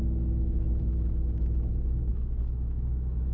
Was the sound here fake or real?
fake